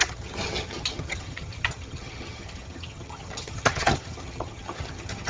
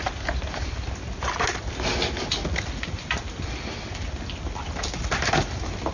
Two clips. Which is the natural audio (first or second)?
second